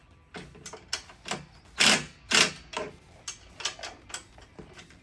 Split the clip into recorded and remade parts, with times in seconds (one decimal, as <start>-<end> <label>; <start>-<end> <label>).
0.0-5.0 recorded